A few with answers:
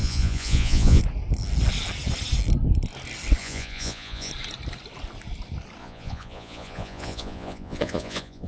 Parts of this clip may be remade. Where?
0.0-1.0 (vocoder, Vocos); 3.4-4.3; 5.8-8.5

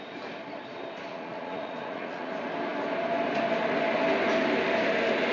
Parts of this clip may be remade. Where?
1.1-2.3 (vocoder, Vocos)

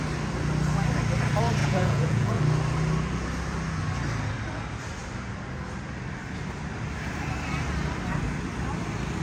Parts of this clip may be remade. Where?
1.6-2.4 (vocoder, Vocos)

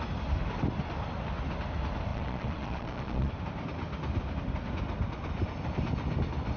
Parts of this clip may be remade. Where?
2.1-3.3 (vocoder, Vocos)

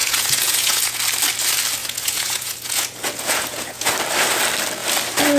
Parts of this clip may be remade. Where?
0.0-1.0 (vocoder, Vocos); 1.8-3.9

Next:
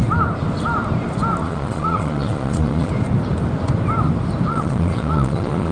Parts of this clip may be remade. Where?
1.4-2.9 (vocoder, Vocos); 4.5-5.7

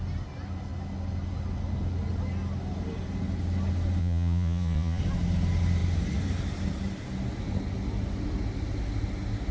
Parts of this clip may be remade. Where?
4.0-5.0 (vocoder, Vocos)

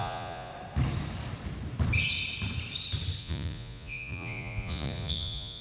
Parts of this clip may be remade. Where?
0.0-0.5 (vocoder, Vocos); 3.2-5.6